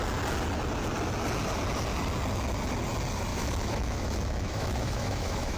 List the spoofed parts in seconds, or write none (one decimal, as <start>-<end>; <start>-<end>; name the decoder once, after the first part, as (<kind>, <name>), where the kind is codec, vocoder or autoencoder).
3.3-5.6 (autoencoder, DAC-VAE)